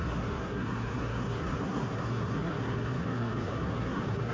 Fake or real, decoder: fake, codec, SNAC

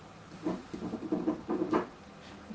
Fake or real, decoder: real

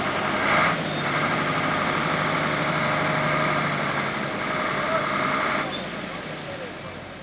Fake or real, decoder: real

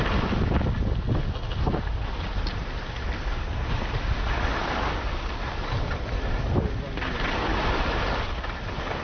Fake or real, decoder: real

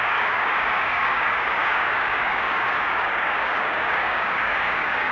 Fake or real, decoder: fake, codec, DAC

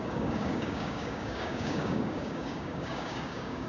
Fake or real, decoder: fake, codec, DAC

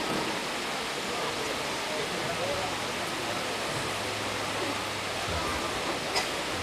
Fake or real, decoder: real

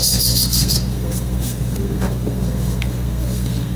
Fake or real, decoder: fake, codec, SNAC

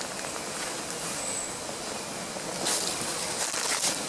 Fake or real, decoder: real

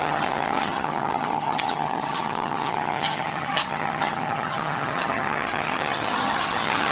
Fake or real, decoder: fake, vocoder, HiFi-GAN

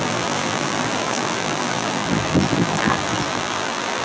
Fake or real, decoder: fake, vocoder, BigVGAN v2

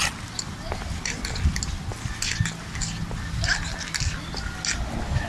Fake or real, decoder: real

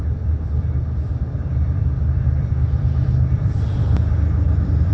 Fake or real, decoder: fake, vocoder, BigVGAN v2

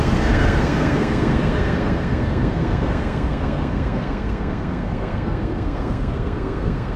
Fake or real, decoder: fake, codec, SNAC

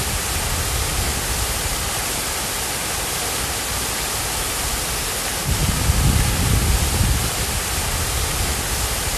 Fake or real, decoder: real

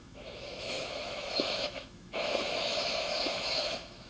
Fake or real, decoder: fake, autoencoder, DAC-VAE